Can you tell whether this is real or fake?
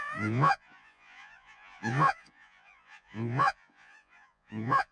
fake